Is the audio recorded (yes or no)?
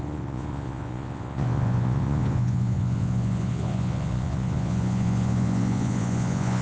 no